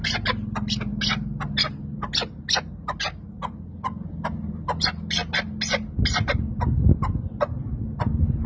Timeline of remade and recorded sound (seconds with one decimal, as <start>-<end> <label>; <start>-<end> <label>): 0.0-8.5 recorded